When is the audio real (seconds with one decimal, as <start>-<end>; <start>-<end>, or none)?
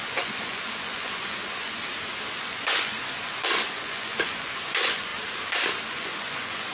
1.8-2.4; 5.1-5.9